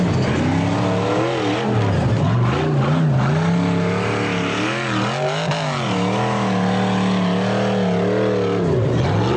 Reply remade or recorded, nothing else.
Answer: recorded